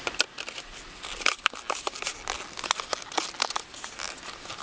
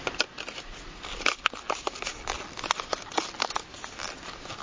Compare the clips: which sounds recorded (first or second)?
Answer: first